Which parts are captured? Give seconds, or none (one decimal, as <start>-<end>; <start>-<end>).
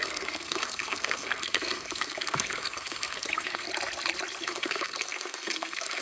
3.7-4.4